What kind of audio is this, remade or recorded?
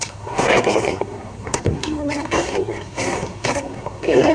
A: remade